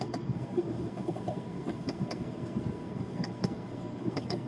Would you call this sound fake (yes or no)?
yes